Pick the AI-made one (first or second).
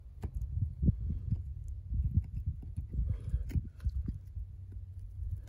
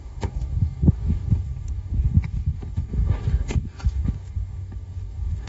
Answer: second